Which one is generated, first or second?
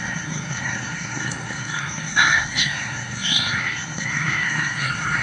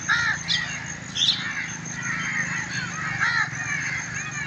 first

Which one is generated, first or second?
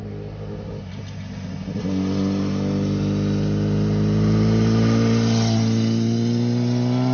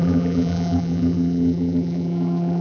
second